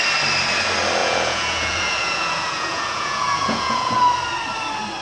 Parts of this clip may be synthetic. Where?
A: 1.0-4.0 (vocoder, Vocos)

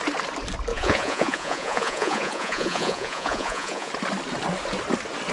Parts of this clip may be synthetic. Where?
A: 0.7-3.9 (vocoder, Vocos)

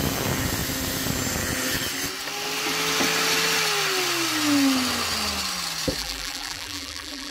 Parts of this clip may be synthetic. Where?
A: 6.0-7.3 (vocoder, BigVGAN v2)

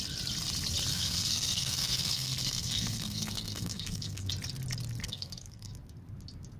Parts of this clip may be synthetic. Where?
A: 0.9-4.3 (codec, SNAC); 5.0-5.7